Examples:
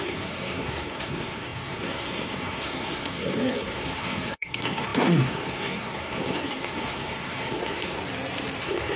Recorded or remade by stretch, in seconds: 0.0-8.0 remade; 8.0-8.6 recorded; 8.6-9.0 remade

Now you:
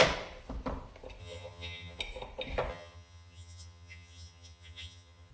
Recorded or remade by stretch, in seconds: 0.0-1.2 recorded; 1.2-2.0 remade; 2.0-2.7 recorded; 2.7-5.3 remade

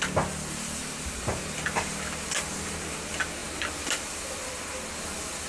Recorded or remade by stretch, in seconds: 0.0-5.5 recorded

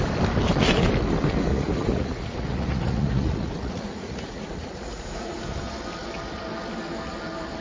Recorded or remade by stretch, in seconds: 0.0-1.5 recorded; 1.5-5.4 remade; 5.4-7.6 recorded

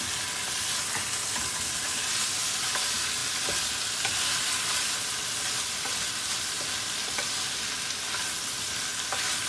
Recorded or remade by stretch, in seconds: 0.0-9.5 recorded

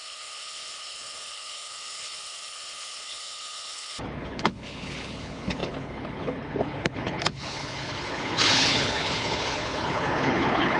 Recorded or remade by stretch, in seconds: 0.0-10.8 remade

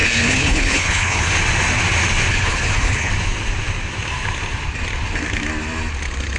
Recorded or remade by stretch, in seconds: 0.0-1.3 remade; 1.3-2.3 recorded; 2.3-3.1 remade; 3.1-6.4 recorded

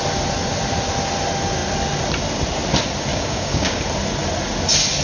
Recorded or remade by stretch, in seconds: 0.0-3.1 recorded; 3.1-3.8 remade; 3.8-5.0 recorded